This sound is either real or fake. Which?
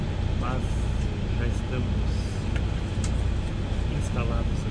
real